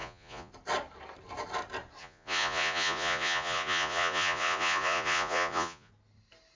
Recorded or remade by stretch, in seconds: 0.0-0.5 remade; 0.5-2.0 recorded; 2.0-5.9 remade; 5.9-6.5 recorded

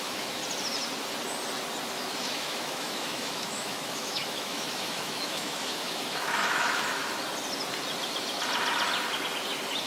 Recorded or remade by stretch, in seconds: 0.0-0.4 remade; 0.4-1.9 recorded; 1.9-7.0 remade; 7.0-9.9 recorded